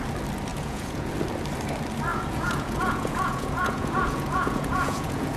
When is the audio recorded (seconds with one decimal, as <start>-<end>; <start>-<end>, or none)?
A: 0.0-0.5; 1.1-2.1